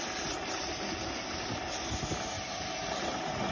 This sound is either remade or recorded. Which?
recorded